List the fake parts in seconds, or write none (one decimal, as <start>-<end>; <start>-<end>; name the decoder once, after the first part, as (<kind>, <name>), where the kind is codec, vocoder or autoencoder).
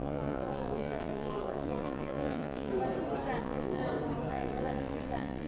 0.0-2.7 (vocoder, WaveNeXt); 3.4-3.8; 4.3-5.5